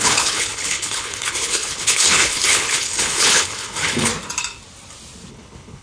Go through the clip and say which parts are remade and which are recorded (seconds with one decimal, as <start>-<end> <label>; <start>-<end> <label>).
0.0-4.1 remade; 4.1-5.3 recorded; 5.3-5.8 remade

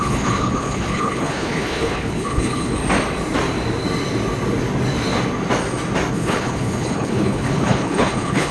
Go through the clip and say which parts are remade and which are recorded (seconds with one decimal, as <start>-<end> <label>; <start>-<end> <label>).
0.0-2.8 remade; 2.8-6.1 recorded; 6.1-8.5 remade

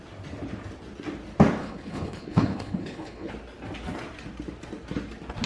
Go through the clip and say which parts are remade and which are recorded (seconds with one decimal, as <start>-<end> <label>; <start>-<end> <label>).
0.0-1.6 recorded; 1.6-3.3 remade; 3.3-5.5 recorded

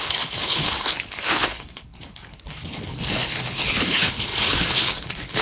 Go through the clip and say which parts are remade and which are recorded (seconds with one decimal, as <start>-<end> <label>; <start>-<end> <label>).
0.0-5.4 remade

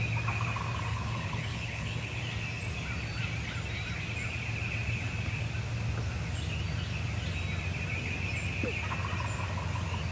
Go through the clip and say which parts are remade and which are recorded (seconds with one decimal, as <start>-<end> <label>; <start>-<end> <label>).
0.0-0.9 recorded; 0.9-2.2 remade; 2.2-10.1 recorded

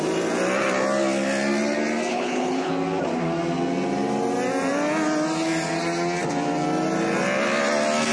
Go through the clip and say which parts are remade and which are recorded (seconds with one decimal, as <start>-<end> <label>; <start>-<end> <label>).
0.0-2.1 recorded; 2.1-2.7 remade; 2.7-8.1 recorded